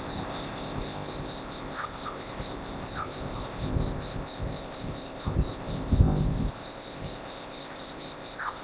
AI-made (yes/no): yes